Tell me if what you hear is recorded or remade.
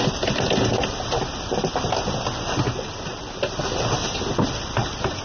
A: recorded